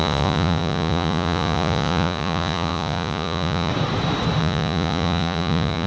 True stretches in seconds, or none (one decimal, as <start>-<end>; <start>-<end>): 3.7-4.4